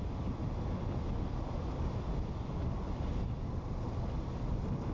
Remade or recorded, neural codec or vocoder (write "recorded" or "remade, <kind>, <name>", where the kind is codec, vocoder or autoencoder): recorded